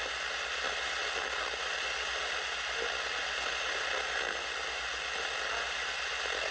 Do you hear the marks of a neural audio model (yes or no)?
no